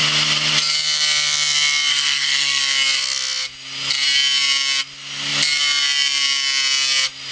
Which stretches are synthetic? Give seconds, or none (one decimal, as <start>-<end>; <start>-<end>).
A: 1.9-2.6